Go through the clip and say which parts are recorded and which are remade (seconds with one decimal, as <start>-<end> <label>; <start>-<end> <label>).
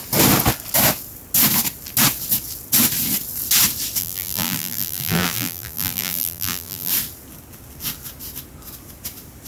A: 0.0-4.0 recorded; 4.0-6.9 remade; 6.9-9.5 recorded